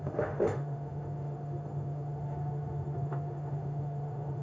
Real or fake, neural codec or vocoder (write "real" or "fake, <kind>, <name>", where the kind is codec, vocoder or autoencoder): fake, autoencoder, DAC-VAE